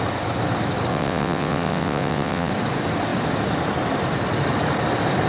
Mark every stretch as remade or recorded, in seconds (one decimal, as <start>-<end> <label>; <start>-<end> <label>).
0.0-0.9 recorded; 0.9-2.5 remade; 2.5-5.3 recorded